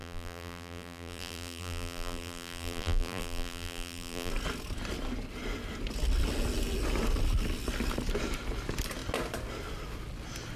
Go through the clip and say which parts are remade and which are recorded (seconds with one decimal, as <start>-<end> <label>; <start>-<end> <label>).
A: 0.0-4.3 remade; 4.3-10.6 recorded